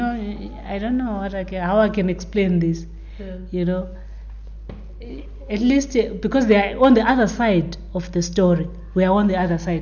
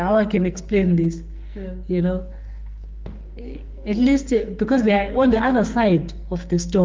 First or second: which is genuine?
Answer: first